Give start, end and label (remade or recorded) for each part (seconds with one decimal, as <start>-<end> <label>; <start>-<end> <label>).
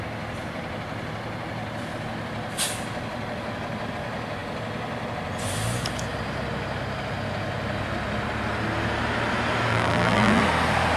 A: 0.0-9.7 recorded; 9.7-10.4 remade; 10.4-11.0 recorded